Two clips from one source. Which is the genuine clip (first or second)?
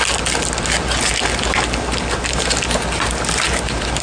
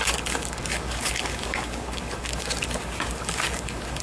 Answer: first